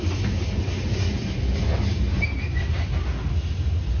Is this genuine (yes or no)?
yes